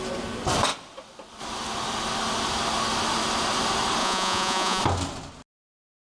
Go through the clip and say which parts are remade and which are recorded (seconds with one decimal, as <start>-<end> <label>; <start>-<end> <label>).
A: 0.0-4.0 recorded; 4.0-4.8 remade; 4.8-6.0 recorded